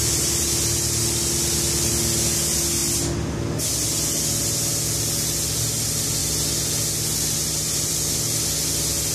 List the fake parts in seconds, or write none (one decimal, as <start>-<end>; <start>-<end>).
none